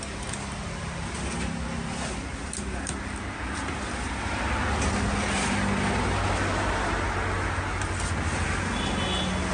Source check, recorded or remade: recorded